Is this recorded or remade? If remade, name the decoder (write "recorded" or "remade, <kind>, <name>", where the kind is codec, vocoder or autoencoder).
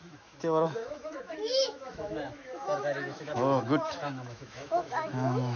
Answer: remade, autoencoder, DAC-VAE